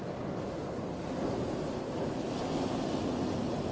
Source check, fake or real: real